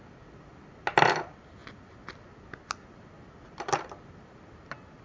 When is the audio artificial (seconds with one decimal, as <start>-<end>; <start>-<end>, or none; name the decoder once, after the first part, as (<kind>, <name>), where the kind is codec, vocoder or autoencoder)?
none